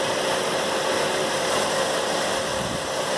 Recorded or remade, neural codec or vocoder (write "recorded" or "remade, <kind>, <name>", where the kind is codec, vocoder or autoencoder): recorded